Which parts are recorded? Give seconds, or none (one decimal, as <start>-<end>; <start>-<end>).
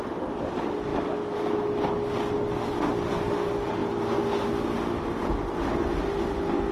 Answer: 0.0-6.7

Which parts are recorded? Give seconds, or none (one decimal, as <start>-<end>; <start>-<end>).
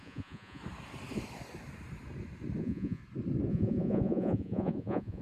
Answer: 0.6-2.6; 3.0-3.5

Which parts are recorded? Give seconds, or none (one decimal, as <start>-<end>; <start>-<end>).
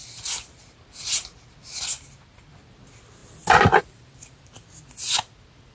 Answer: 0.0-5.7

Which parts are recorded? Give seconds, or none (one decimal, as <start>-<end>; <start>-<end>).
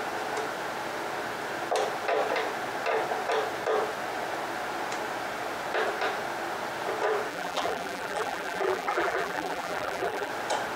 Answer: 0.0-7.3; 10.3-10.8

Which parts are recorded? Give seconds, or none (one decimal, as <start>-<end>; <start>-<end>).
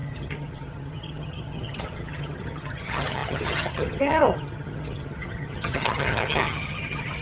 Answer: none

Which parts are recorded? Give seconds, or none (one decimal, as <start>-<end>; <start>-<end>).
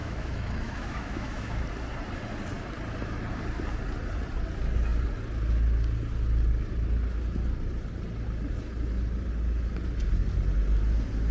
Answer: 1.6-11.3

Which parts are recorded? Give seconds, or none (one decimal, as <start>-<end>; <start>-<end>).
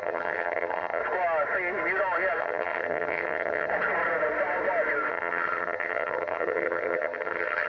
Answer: 1.0-2.4; 3.7-5.1